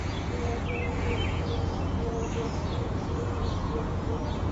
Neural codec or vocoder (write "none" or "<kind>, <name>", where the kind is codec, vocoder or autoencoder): vocoder, Vocos